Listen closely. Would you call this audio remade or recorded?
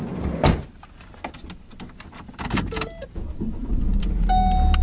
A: recorded